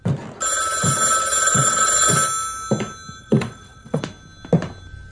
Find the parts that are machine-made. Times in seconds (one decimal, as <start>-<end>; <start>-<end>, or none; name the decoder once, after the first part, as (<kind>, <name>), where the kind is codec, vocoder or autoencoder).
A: 1.5-2.1 (vocoder, WaveNeXt); 3.2-4.0